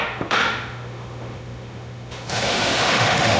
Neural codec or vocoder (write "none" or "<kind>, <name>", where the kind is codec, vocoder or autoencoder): autoencoder, DAC-VAE